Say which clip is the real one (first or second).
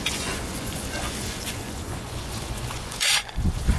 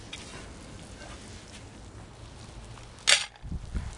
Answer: second